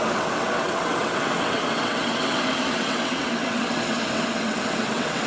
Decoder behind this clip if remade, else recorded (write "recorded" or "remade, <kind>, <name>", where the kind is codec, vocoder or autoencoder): remade, vocoder, WaveNeXt